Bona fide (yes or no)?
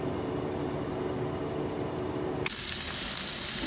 yes